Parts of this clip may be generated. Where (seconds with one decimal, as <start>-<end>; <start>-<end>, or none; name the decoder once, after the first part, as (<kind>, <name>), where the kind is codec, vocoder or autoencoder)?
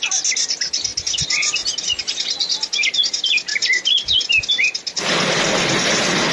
0.0-3.5 (vocoder, BigVGAN v2); 4.5-6.3